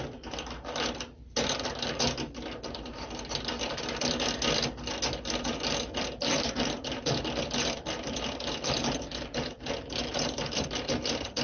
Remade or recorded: recorded